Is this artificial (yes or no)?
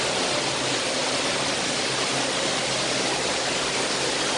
no